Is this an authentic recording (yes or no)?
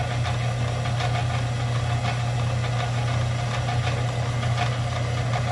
yes